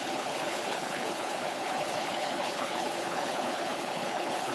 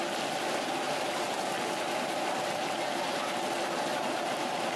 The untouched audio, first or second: second